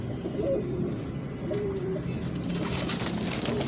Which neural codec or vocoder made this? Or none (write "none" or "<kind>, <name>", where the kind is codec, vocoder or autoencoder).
none